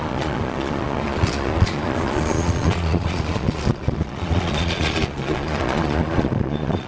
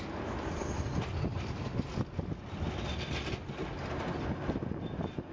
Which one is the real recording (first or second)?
second